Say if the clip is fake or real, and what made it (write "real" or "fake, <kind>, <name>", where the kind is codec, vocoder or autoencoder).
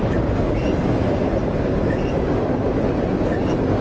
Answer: real